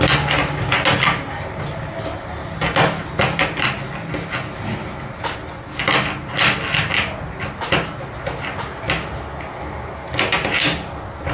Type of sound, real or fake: real